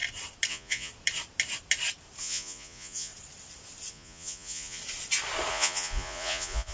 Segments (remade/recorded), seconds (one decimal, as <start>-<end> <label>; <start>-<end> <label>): 0.0-0.5 recorded; 0.5-0.9 remade; 0.9-2.2 recorded; 2.2-3.1 remade; 3.1-3.9 recorded; 3.9-4.8 remade; 4.8-5.5 recorded; 5.5-6.7 remade

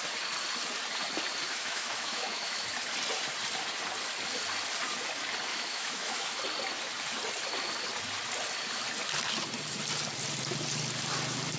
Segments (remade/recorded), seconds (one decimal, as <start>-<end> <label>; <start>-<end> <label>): 0.0-1.5 recorded; 1.5-2.7 remade; 2.7-5.5 recorded; 5.5-6.4 remade; 6.4-11.6 recorded